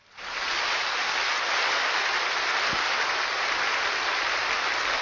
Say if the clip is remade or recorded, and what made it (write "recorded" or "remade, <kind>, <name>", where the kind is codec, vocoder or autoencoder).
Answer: recorded